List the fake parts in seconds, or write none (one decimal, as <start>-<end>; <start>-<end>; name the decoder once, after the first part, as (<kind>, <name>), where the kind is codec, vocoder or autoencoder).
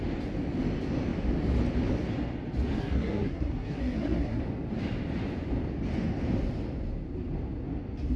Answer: 2.8-4.4 (codec, SNAC)